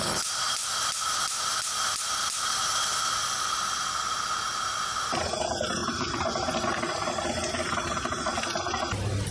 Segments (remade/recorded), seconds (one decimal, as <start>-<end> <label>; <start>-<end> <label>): 0.0-5.8 recorded; 5.8-6.8 remade; 6.8-9.3 recorded